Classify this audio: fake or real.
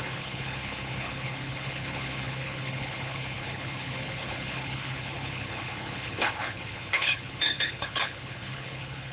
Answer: fake